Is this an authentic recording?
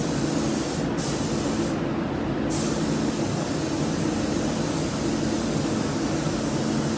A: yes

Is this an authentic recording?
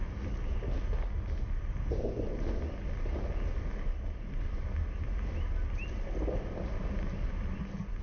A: yes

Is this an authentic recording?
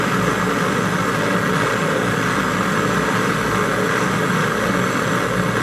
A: yes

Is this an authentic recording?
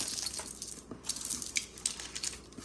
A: yes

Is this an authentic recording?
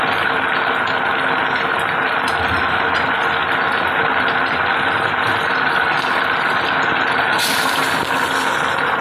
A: yes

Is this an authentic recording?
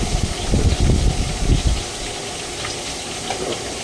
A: yes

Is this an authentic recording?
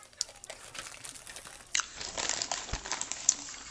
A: yes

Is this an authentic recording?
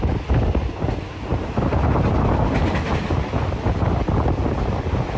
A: yes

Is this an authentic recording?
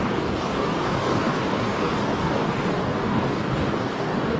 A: no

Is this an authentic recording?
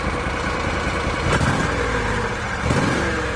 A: no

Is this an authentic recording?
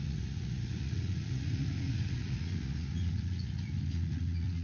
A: no